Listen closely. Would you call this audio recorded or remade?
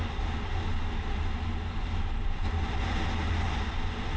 recorded